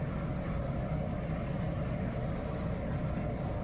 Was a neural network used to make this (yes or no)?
no